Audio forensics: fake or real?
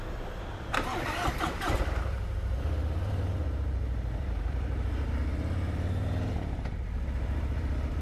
fake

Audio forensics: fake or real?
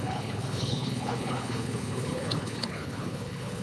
fake